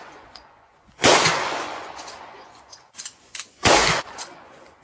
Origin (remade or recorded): remade